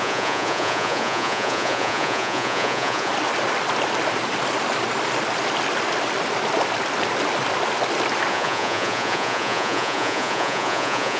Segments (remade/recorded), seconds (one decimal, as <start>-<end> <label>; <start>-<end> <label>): 0.0-3.1 remade; 3.1-8.3 recorded; 8.3-11.2 remade